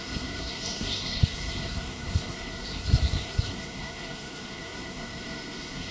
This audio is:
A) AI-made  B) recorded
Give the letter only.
A